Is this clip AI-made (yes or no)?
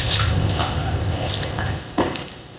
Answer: yes